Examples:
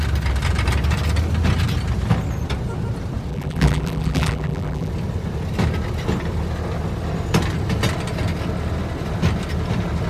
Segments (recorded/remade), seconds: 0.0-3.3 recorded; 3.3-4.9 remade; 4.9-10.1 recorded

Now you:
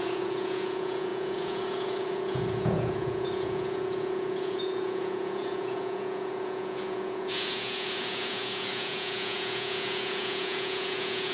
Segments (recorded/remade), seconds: 0.0-11.3 remade

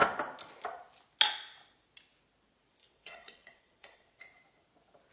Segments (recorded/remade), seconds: 0.0-2.8 recorded; 2.8-4.2 remade; 4.2-5.1 recorded

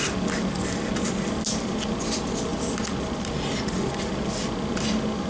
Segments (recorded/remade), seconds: 0.0-5.3 recorded